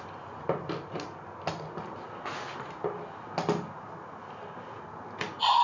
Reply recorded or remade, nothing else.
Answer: recorded